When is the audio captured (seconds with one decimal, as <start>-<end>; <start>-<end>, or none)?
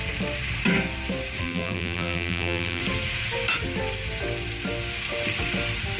0.0-1.4; 2.8-6.0